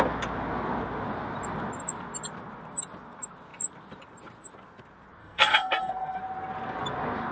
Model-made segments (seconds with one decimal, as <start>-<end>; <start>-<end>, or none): 5.2-6.2